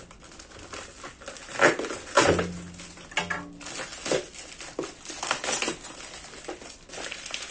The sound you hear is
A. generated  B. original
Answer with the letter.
B